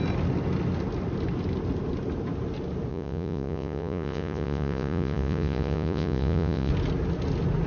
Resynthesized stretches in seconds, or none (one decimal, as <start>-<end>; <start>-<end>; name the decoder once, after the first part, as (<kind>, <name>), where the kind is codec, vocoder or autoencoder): 2.9-6.7 (vocoder, Vocos)